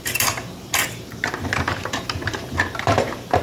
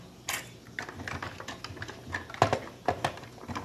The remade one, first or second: first